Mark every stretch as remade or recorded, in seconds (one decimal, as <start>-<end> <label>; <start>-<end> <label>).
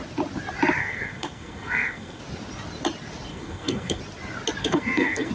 0.0-0.8 recorded; 0.8-2.2 remade; 2.2-3.3 recorded; 3.3-4.0 remade; 4.0-4.6 recorded; 4.6-5.3 remade